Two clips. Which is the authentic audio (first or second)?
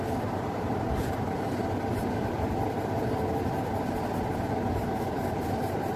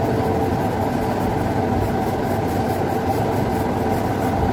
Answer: second